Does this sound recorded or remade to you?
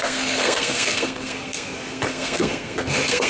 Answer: remade